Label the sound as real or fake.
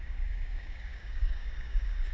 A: fake